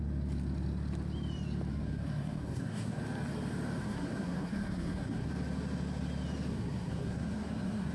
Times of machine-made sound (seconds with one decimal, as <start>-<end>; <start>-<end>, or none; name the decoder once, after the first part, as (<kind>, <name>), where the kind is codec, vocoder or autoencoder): 1.7-3.0 (codec, SNAC); 3.8-5.3; 6.5-7.9